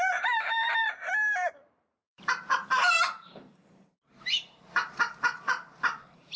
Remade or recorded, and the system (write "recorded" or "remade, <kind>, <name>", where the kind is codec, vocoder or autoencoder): remade, vocoder, BigVGAN v2